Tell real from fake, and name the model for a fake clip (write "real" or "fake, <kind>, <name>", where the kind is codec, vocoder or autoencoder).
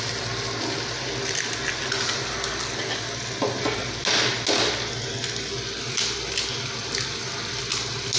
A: real